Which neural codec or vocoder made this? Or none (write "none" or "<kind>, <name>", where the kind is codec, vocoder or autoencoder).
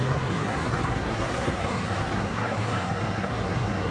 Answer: codec, SNAC